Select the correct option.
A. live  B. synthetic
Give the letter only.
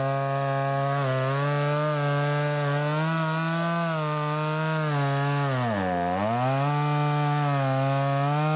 A